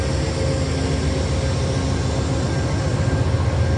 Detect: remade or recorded recorded